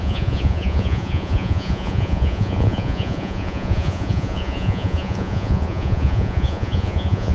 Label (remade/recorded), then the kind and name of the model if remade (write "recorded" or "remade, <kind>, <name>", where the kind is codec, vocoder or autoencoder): remade, vocoder, Vocos